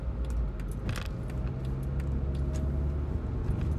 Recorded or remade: recorded